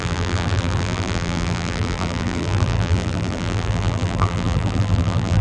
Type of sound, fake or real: fake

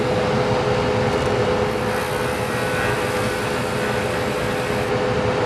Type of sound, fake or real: real